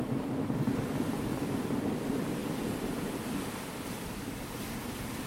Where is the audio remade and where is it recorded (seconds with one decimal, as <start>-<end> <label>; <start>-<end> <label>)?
0.0-5.3 recorded